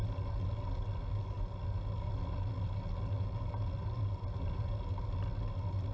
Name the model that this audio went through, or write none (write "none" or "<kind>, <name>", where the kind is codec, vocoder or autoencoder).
none